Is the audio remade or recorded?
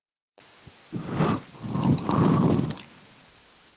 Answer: recorded